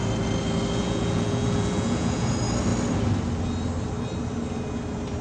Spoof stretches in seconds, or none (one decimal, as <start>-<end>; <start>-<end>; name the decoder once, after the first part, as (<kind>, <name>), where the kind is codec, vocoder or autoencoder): 0.8-2.3 (vocoder, Vocos)